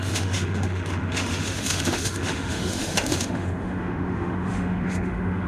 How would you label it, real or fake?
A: fake